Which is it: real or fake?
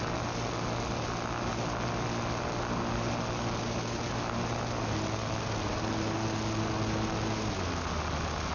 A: real